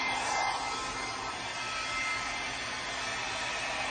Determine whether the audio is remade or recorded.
recorded